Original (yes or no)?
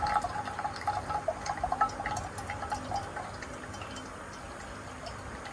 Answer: yes